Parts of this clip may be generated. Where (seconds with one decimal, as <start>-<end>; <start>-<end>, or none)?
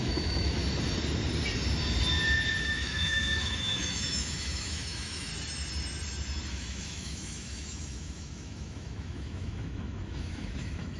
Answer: 0.0-0.6; 2.6-5.3; 6.5-11.0